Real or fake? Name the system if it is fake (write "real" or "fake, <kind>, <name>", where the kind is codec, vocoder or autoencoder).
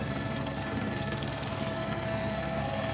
fake, codec, SNAC